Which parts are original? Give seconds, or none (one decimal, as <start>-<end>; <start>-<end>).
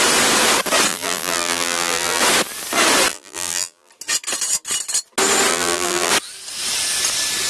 0.0-0.9; 2.2-3.1; 3.9-5.5; 6.1-7.5